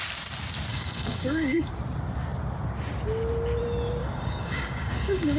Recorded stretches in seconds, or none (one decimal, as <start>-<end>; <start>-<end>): 0.0-0.7; 1.7-4.0